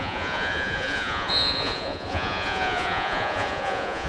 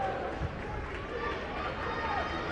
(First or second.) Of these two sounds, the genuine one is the second